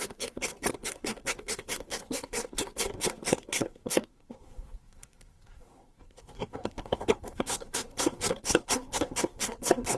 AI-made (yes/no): yes